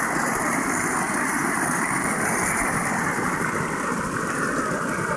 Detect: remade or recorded recorded